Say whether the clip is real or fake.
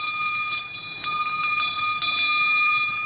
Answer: real